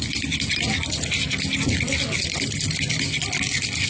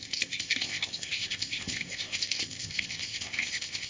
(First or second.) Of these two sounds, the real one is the first